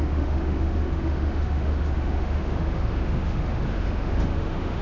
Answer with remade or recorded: remade